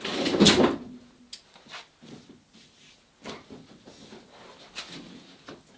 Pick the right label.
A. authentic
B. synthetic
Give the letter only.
A